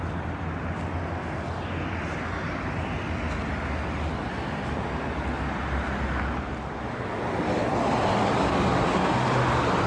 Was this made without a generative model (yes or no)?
yes